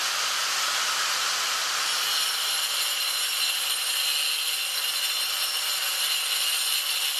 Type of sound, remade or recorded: recorded